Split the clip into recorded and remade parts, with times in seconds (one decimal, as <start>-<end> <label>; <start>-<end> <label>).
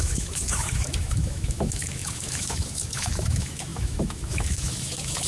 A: 0.0-5.3 remade